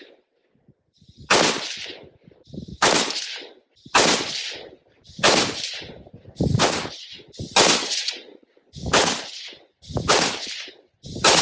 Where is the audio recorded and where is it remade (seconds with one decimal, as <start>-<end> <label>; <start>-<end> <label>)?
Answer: 0.0-7.8 recorded; 7.8-8.5 remade; 8.5-11.4 recorded